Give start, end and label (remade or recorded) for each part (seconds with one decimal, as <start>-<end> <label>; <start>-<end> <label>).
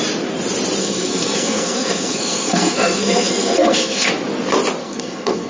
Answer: 0.0-0.8 recorded; 0.8-4.1 remade; 4.1-4.8 recorded; 4.8-5.5 remade